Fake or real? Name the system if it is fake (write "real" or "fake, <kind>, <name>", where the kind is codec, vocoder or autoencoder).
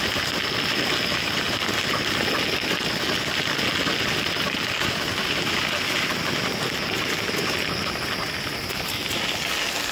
real